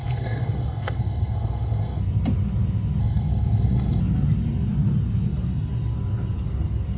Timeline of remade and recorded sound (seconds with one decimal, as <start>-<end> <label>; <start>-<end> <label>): 0.0-2.0 remade; 2.0-3.0 recorded; 3.0-4.0 remade; 4.0-7.0 recorded